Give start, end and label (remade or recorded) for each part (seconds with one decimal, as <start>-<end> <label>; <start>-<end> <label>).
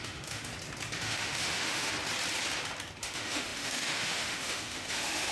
0.0-0.5 remade; 0.5-1.0 recorded; 1.0-1.9 remade; 1.9-3.0 recorded; 3.0-5.3 remade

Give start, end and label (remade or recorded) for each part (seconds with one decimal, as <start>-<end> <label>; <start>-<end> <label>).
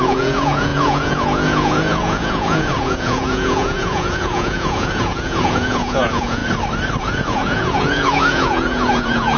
0.0-6.4 remade; 6.4-7.0 recorded; 7.0-9.4 remade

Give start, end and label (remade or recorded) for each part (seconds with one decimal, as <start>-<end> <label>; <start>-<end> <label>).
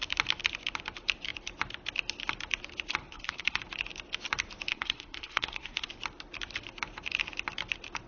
0.0-3.0 recorded; 3.0-3.6 remade; 3.6-4.7 recorded; 4.7-5.9 remade; 5.9-8.1 recorded